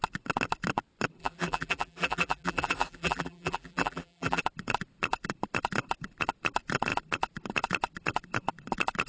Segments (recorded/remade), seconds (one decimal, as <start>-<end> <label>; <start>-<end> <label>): 0.0-1.2 recorded; 1.2-4.4 remade; 4.4-9.1 recorded

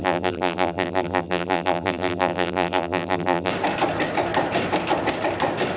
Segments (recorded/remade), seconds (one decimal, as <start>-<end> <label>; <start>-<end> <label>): 0.0-3.5 remade; 3.5-5.8 recorded

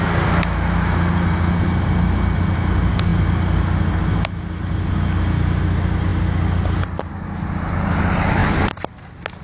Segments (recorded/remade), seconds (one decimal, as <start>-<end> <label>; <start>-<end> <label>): 0.0-9.4 recorded